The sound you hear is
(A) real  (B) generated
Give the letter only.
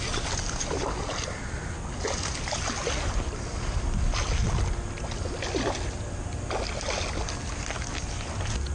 A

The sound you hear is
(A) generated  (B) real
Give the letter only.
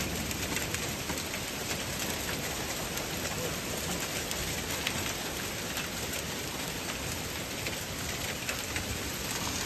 B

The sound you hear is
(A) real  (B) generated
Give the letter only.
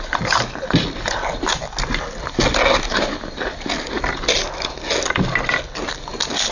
A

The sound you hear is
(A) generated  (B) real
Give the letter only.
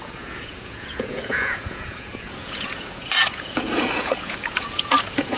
A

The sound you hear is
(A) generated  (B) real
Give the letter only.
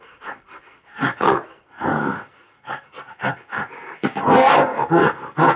A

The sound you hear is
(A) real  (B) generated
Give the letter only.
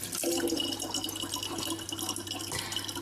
A